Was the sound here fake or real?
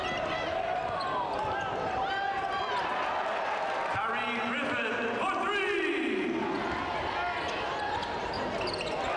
real